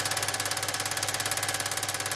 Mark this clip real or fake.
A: real